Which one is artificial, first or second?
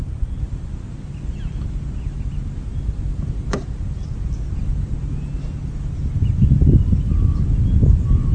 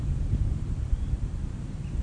second